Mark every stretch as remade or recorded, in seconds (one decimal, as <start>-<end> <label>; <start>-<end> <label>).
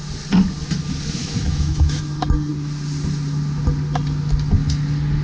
0.0-1.2 recorded; 1.2-2.0 remade; 2.0-5.2 recorded